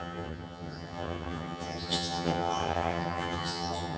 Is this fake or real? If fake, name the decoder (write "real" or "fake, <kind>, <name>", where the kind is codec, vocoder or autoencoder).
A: fake, vocoder, HiFi-GAN